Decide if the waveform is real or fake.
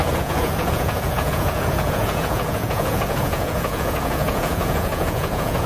fake